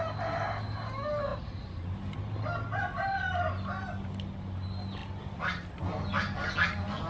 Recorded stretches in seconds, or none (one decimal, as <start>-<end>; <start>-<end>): 0.0-7.1